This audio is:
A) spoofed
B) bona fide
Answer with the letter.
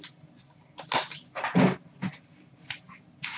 B